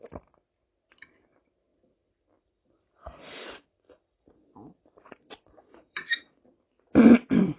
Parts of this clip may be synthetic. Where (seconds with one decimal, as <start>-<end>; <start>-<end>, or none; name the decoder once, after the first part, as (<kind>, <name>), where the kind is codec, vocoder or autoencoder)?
1.7-6.3 (vocoder, BigVGAN v2)